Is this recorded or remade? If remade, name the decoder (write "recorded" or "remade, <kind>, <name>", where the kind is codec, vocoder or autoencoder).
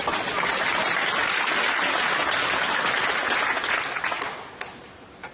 recorded